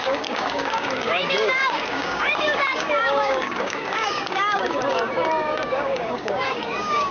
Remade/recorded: remade